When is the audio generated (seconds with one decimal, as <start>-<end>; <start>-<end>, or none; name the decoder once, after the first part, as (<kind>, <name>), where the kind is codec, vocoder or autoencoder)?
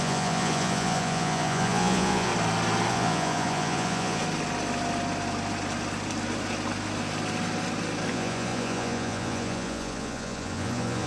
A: 0.0-2.3 (vocoder, Vocos); 2.9-4.2; 8.1-11.1